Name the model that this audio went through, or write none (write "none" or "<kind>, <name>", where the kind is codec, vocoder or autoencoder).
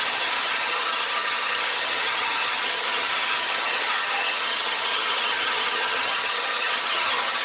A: vocoder, HiFi-GAN